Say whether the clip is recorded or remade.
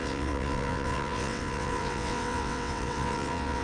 remade